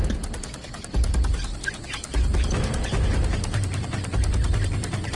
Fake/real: real